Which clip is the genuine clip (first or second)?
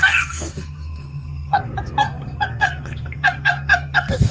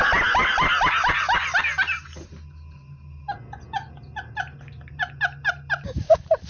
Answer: second